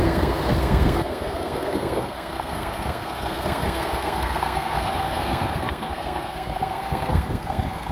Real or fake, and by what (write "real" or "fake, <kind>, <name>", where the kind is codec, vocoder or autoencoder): fake, codec, SNAC